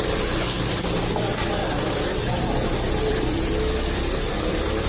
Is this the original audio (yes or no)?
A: no